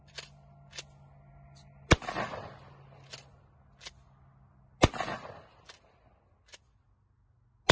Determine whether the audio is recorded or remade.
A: recorded